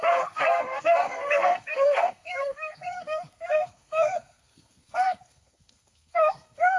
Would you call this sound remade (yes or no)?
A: yes